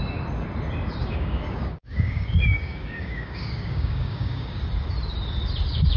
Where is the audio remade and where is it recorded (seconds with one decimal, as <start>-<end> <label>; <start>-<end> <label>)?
0.0-1.0 recorded; 1.0-4.6 remade; 4.6-6.0 recorded